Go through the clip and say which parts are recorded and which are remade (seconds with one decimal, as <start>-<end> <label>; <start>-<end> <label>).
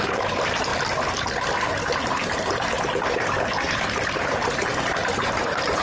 0.0-0.7 remade; 0.7-1.8 recorded; 1.8-5.8 remade